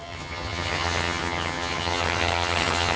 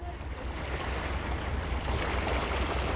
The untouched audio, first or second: second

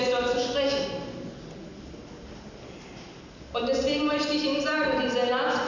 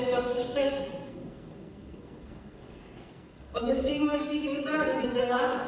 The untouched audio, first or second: first